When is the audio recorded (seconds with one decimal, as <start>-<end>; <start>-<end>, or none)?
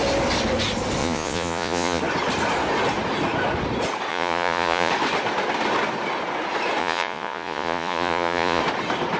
0.0-1.0; 2.0-4.1; 4.9-6.8; 8.6-9.2